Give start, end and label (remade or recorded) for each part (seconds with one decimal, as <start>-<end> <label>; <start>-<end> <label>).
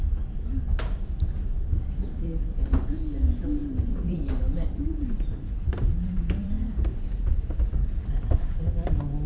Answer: 0.0-3.6 recorded; 3.6-8.6 remade; 8.6-9.3 recorded